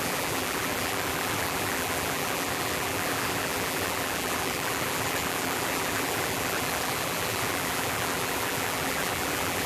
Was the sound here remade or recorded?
remade